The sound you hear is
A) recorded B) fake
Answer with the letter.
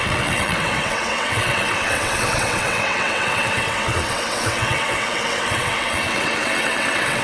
B